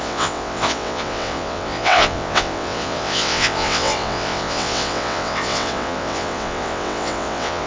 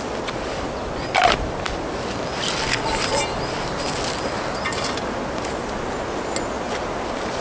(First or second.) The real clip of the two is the second